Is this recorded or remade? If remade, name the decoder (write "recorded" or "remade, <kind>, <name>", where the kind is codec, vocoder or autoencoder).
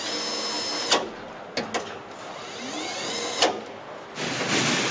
recorded